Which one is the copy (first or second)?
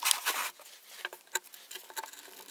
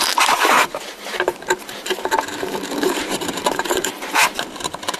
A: second